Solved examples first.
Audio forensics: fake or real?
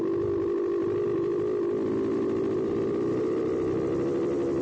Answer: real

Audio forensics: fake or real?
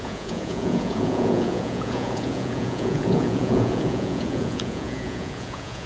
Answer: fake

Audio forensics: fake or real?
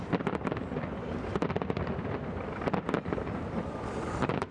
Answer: fake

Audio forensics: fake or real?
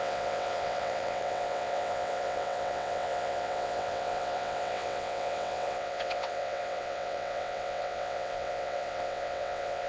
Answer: fake